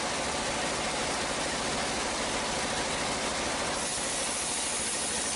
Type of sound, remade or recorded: recorded